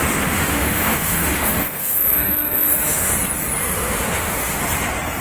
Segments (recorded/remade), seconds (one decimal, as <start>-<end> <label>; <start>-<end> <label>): 0.0-3.1 remade; 3.1-3.6 recorded; 3.6-4.6 remade; 4.6-5.2 recorded